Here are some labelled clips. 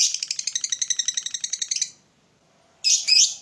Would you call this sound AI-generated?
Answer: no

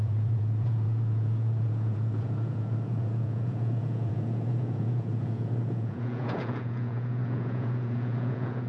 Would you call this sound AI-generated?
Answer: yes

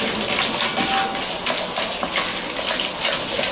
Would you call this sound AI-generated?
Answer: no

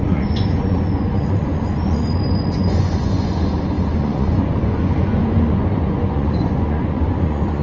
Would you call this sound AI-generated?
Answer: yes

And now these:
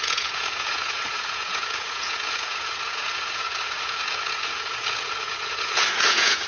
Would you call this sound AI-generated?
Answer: yes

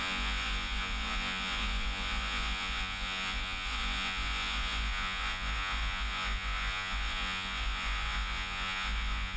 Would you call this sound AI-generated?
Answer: yes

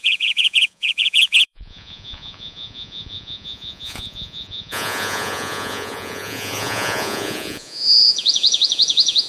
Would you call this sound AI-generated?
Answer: yes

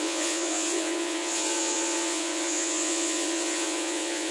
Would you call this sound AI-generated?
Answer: yes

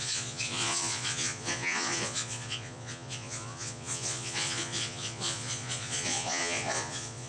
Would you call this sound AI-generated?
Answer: yes